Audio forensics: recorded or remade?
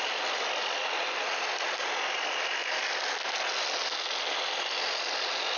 recorded